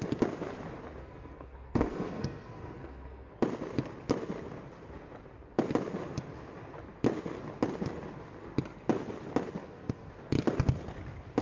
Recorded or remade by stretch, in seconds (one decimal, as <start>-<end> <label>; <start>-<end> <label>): 0.0-1.0 recorded; 1.0-3.3 remade; 3.3-9.6 recorded; 9.6-10.1 remade; 10.1-11.4 recorded